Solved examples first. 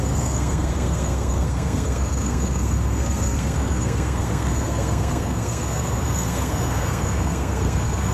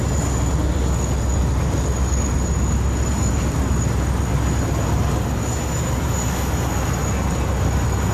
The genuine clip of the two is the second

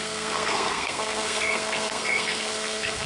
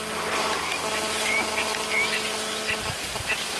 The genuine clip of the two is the second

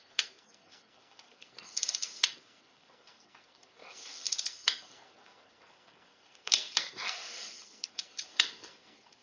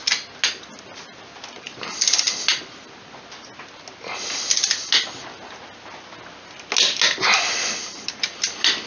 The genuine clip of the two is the second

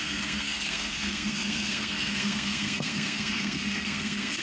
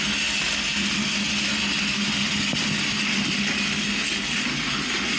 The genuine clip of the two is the second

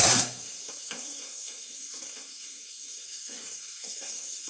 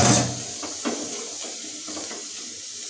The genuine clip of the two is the second